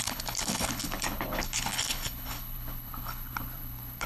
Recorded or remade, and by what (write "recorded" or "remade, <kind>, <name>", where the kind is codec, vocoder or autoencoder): remade, codec, HILCodec